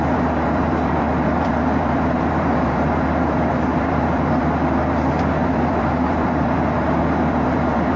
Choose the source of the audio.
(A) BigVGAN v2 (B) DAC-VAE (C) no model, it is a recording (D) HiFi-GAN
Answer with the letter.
A